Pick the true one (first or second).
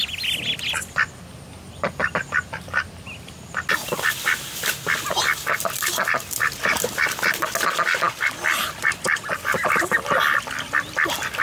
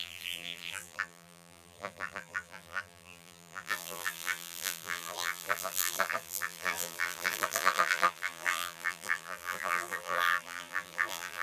first